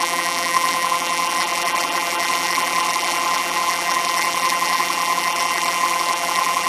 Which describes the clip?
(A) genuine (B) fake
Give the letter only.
B